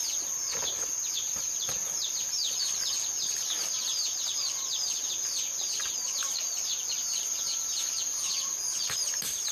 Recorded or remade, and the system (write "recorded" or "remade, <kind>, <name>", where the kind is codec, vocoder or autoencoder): remade, vocoder, BigVGAN v2